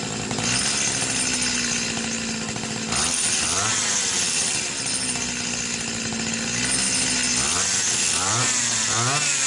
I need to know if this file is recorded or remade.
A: recorded